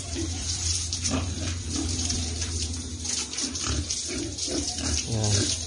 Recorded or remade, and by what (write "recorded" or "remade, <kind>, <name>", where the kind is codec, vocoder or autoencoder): remade, vocoder, BigVGAN v2